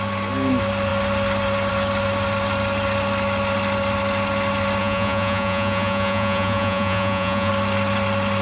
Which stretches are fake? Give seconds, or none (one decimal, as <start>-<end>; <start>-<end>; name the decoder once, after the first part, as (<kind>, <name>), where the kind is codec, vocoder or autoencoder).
4.8-7.5 (vocoder, Vocos)

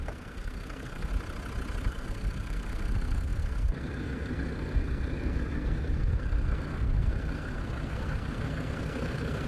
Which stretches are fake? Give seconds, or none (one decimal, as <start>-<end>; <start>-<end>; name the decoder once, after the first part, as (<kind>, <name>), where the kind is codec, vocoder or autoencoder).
0.0-1.1 (codec, SNAC); 1.9-9.5

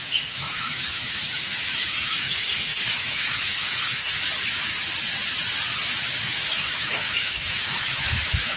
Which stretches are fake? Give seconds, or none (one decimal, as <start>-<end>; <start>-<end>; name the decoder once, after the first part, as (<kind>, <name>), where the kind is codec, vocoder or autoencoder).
0.0-4.2 (autoencoder, DAC-VAE); 6.2-8.6

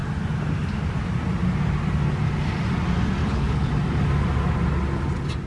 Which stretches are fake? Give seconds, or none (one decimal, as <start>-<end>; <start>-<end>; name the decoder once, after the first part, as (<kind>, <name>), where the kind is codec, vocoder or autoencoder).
3.2-3.7 (codec, HILCodec)